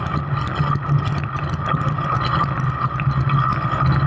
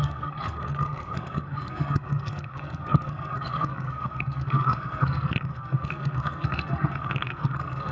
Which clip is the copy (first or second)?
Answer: second